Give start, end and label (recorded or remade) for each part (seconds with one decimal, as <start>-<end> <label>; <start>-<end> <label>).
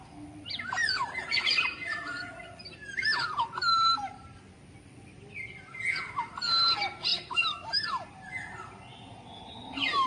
0.0-10.1 recorded